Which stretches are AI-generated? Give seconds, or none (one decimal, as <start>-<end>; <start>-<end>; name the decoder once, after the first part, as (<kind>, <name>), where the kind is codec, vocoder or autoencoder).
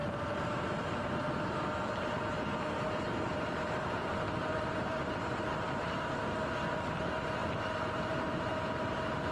3.1-5.1 (vocoder, BigVGAN v2); 7.4-9.3